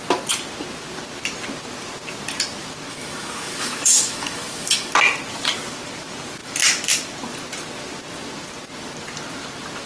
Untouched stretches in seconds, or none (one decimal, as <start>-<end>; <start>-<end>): 0.0-2.9; 4.9-9.9